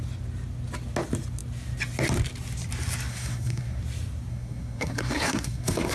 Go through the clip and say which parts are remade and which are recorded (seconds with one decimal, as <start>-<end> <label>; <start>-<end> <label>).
0.0-3.1 recorded; 3.1-3.8 remade; 3.8-4.3 recorded; 4.3-5.9 remade